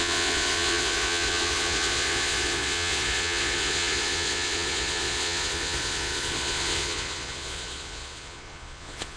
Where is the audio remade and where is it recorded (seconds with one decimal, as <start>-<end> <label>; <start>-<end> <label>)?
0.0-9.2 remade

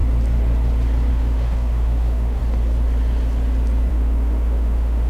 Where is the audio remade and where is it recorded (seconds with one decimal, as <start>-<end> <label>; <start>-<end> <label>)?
0.0-1.1 recorded; 1.1-2.4 remade; 2.4-3.9 recorded; 3.9-5.1 remade

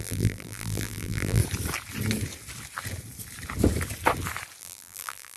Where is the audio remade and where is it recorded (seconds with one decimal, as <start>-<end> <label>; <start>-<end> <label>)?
0.0-1.4 remade; 1.4-4.6 recorded; 4.6-5.4 remade